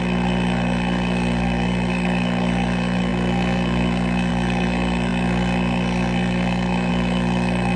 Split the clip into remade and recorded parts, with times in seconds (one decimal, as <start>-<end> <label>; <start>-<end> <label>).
0.0-7.8 remade